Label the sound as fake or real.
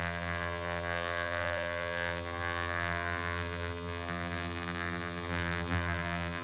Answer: fake